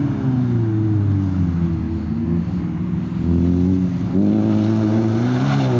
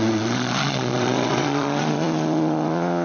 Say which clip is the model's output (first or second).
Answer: second